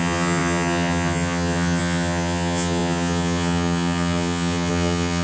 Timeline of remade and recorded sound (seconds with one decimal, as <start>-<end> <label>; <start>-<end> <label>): 0.0-5.2 remade